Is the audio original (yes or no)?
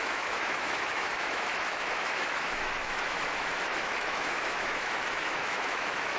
no